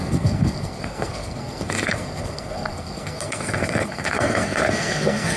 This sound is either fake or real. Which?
fake